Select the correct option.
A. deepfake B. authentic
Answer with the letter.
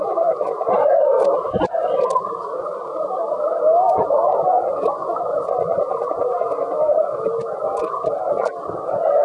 B